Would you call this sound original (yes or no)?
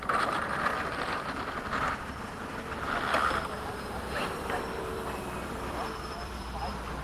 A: no